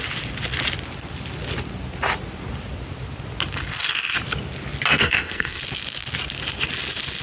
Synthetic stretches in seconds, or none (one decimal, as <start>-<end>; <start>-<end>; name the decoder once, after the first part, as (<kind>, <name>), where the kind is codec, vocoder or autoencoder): 4.9-5.6 (codec, SNAC)